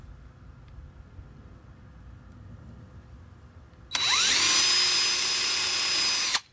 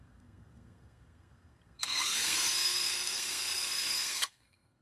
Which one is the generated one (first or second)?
second